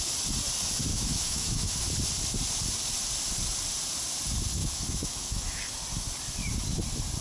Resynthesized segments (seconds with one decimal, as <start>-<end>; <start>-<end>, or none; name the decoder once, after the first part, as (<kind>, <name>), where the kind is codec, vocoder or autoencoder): 0.9-1.8 (autoencoder, DAC-VAE); 4.6-5.6